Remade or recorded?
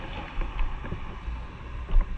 recorded